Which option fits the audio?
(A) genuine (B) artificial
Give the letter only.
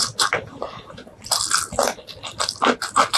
A